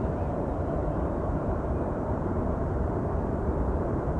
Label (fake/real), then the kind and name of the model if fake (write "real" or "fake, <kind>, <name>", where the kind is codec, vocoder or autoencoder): fake, vocoder, BigVGAN v2